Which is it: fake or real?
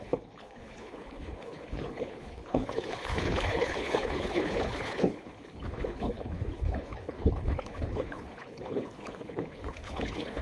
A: fake